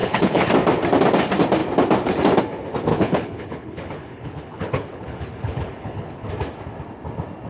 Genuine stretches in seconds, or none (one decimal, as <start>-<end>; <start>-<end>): 0.5-2.9; 6.3-7.5

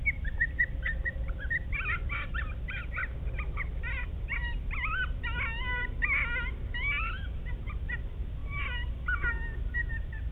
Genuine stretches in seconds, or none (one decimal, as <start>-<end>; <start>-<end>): 3.0-7.0; 8.4-9.6

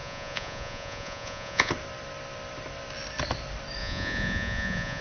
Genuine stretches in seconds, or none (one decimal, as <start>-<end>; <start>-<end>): 1.7-3.8